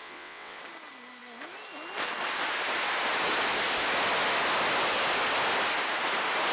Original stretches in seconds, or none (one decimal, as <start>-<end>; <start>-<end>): 0.6-6.5